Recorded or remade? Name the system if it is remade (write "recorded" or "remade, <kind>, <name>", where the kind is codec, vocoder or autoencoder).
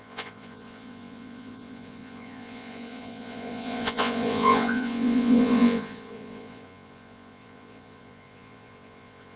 remade, vocoder, Vocos